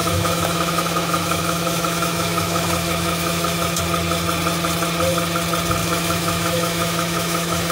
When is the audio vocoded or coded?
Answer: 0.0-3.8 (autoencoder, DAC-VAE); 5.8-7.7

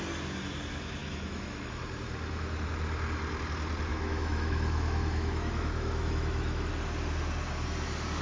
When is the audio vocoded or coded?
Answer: 1.0-1.8 (autoencoder, DAC-VAE); 3.9-6.7

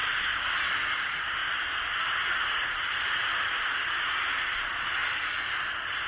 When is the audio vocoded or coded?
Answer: none

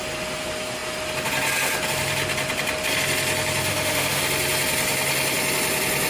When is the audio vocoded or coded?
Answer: 3.7-4.2 (autoencoder, DAC-VAE)

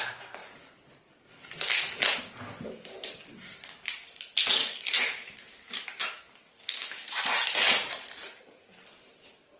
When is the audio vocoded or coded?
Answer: 4.6-7.2 (autoencoder, DAC-VAE)

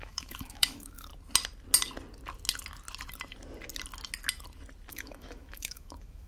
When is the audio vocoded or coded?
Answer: 0.0-1.1 (autoencoder, DAC-VAE); 4.9-6.3

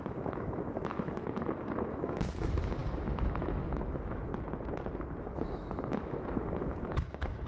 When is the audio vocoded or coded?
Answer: 0.0-4.3 (autoencoder, DAC-VAE); 5.2-7.5